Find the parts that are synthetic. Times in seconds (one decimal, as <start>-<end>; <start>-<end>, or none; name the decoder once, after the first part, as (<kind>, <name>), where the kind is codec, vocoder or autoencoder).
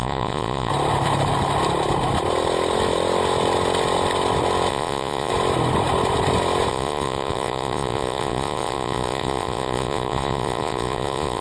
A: 0.0-0.7 (vocoder, Vocos); 4.7-5.3; 6.7-11.4